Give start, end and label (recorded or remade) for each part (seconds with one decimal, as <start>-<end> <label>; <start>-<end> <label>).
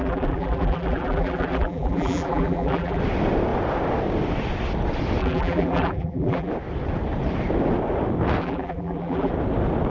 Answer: 0.0-3.0 remade; 3.0-5.2 recorded; 5.2-6.5 remade; 6.5-8.4 recorded; 8.4-9.3 remade; 9.3-9.9 recorded